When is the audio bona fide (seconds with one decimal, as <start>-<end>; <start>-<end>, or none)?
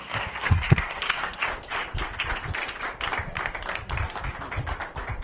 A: 1.4-5.2